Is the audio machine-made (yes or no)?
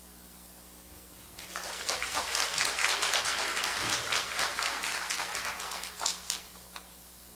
yes